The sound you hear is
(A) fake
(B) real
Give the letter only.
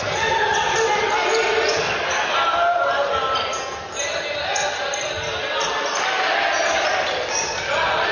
B